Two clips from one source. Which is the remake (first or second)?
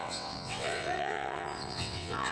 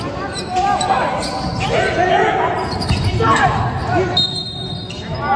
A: first